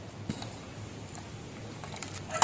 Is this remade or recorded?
recorded